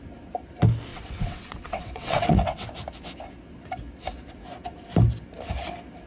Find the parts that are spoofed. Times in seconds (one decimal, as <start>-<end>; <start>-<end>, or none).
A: 0.9-2.7